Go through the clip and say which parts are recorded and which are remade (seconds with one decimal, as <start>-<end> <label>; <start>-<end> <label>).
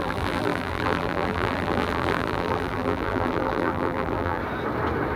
0.0-4.4 remade; 4.4-5.2 recorded